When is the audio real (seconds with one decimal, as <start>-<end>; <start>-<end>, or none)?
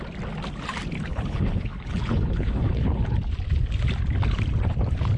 0.0-1.1; 3.0-5.2